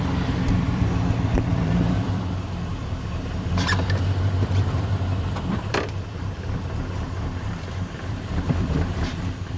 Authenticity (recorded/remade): remade